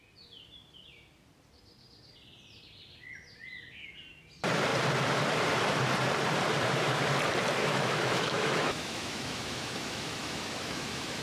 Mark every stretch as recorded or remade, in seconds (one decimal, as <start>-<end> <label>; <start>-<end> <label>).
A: 0.0-7.6 recorded; 7.6-11.2 remade